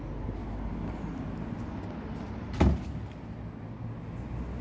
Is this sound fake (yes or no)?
no